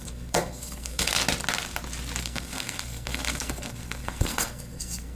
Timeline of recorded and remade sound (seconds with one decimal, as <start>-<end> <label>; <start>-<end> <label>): 0.0-1.2 remade; 1.2-2.2 recorded; 2.2-5.1 remade